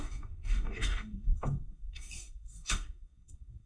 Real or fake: fake